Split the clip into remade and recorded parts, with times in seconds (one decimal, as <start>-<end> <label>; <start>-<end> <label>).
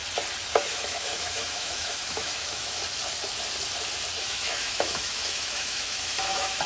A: 0.0-0.7 recorded; 0.7-2.8 remade; 2.8-4.2 recorded; 4.2-6.7 remade